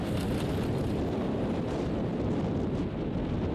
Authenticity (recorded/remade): recorded